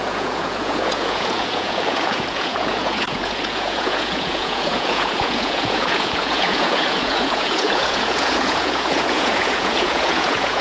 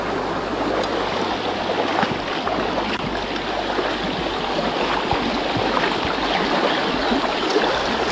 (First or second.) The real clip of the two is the second